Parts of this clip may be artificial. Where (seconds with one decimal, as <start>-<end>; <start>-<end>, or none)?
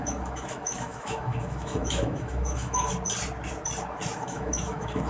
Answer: 0.0-2.9; 4.2-5.1